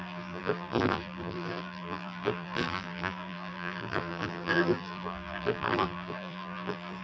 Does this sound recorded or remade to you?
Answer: remade